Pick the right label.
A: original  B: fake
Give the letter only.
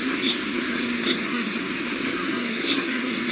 B